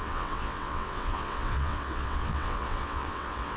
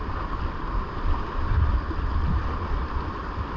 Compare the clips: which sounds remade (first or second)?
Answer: first